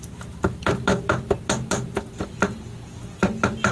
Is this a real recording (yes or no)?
yes